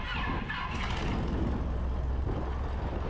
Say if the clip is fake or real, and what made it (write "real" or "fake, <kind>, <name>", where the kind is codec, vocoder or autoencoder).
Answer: real